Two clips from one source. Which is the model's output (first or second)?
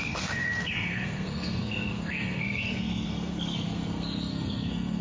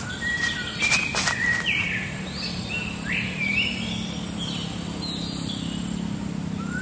first